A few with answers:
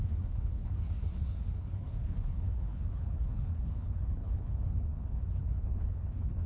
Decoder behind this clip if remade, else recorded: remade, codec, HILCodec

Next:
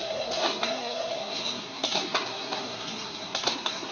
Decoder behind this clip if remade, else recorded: remade, codec, SNAC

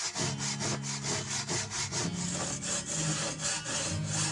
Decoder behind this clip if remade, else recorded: recorded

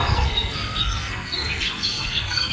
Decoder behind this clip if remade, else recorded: remade, codec, SNAC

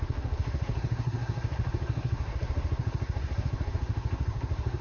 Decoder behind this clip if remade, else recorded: remade, codec, SNAC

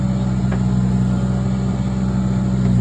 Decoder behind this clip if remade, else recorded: recorded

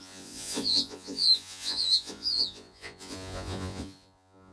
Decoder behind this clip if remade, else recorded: remade, vocoder, Vocos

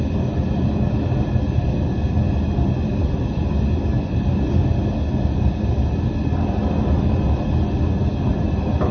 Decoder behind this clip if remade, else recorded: recorded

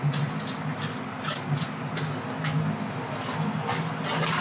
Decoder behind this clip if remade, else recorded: recorded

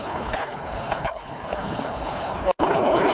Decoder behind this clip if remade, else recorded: remade, codec, HILCodec